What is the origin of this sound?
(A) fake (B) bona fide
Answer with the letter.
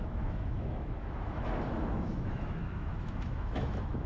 A